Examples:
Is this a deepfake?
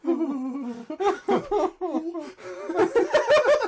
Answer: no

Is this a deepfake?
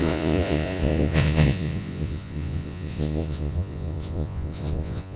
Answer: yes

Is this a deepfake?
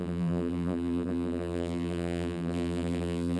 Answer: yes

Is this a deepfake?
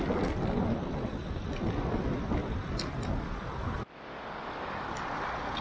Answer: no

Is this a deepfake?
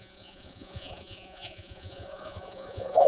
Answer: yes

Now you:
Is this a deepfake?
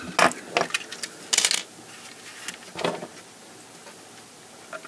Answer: no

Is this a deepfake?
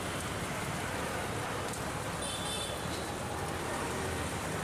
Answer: yes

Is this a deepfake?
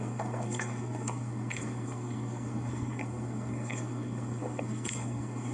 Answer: yes